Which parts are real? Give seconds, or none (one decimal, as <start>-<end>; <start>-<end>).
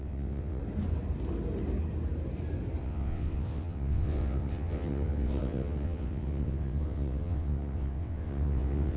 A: 0.6-2.8